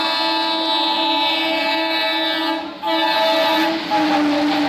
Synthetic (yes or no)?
no